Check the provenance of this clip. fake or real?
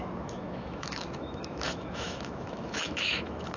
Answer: fake